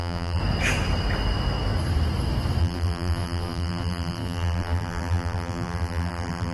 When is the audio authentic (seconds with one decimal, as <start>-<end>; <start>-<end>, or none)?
0.4-2.6